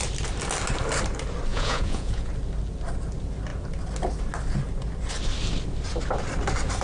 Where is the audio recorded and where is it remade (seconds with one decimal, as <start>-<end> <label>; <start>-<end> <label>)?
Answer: 0.0-1.5 recorded; 1.5-2.3 remade; 2.3-6.8 recorded

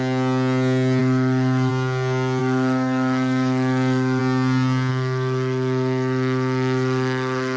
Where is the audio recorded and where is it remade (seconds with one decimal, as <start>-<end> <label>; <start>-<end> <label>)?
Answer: 0.0-1.0 recorded; 1.0-1.7 remade; 1.7-2.4 recorded; 2.4-4.2 remade; 4.2-4.9 recorded; 4.9-7.6 remade

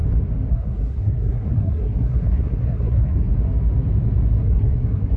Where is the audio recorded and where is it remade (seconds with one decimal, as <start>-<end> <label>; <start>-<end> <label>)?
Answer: 0.0-0.5 recorded; 0.5-3.3 remade; 3.3-4.4 recorded; 4.4-5.2 remade

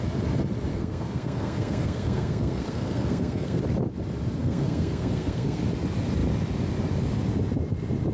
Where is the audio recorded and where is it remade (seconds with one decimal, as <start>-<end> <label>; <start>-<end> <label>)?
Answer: 0.0-0.7 recorded; 0.7-3.6 remade; 3.6-4.4 recorded; 4.4-5.6 remade; 5.6-8.1 recorded

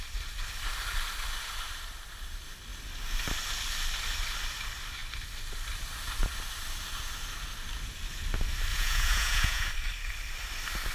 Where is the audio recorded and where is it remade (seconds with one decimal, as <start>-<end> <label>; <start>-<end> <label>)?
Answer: 0.0-8.7 recorded; 8.7-9.7 remade; 9.7-10.9 recorded

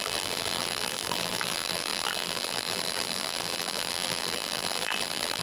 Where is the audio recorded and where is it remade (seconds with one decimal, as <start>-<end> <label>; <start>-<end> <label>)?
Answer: 0.0-5.4 remade

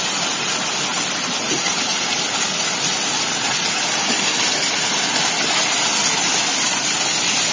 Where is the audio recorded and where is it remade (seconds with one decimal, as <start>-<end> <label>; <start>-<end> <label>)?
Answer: 0.0-7.5 recorded